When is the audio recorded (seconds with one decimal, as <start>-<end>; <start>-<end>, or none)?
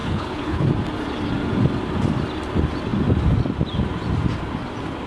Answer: 0.7-5.1